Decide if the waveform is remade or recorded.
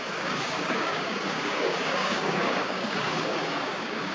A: remade